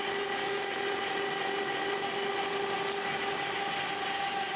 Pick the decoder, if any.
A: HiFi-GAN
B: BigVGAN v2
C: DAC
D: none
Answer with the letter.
D